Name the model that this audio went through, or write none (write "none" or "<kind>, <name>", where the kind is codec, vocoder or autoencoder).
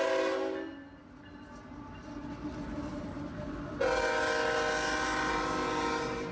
none